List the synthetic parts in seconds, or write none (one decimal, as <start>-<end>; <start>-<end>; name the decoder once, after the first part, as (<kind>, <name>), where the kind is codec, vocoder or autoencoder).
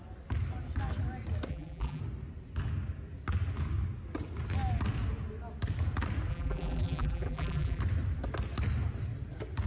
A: 1.5-2.0 (vocoder, BigVGAN v2); 6.3-7.8